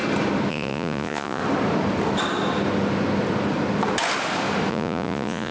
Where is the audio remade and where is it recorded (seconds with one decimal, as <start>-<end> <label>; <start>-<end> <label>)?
0.0-0.5 recorded; 0.5-1.4 remade; 1.4-4.7 recorded; 4.7-5.5 remade